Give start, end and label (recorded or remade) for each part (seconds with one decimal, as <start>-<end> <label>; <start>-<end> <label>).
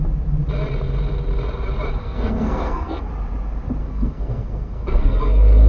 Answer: 0.0-2.0 recorded; 2.0-3.1 remade; 3.1-3.8 recorded; 3.8-5.7 remade